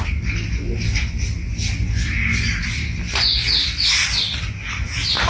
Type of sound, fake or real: real